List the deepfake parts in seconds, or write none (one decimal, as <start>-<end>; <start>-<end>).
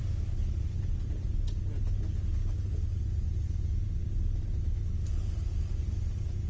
none